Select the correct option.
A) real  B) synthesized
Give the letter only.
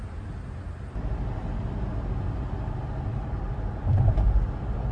A